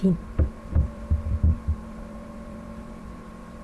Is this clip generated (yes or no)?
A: yes